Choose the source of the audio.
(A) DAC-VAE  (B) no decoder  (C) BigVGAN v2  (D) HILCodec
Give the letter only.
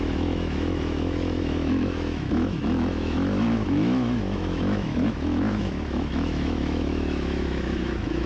A